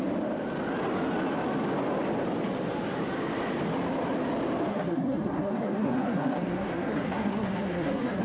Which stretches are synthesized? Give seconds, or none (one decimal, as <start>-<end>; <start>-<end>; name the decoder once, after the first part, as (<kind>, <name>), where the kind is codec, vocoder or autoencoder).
4.7-8.2 (codec, SNAC)